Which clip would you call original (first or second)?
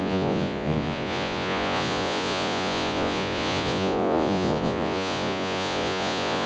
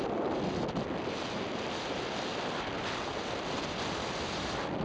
second